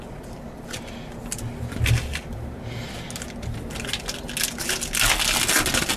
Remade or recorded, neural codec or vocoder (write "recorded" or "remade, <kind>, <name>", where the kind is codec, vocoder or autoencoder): recorded